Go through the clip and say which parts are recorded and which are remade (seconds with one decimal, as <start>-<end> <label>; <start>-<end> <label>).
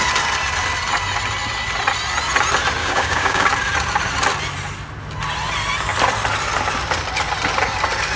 0.0-2.8 recorded; 2.8-3.5 remade; 3.5-8.2 recorded